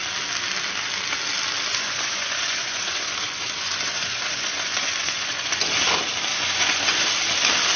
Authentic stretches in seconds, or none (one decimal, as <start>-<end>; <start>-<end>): 0.0-1.7; 5.6-6.3; 7.1-7.8